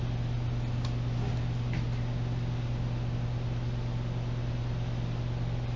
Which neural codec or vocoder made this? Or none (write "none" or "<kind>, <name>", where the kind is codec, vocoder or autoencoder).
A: none